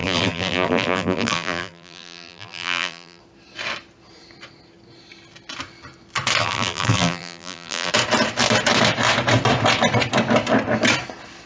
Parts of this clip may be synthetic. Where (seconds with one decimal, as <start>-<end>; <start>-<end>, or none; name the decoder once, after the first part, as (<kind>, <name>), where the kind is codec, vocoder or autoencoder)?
0.0-3.2 (vocoder, BigVGAN v2); 6.4-7.9